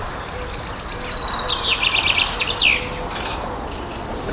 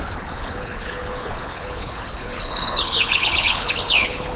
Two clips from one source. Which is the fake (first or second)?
second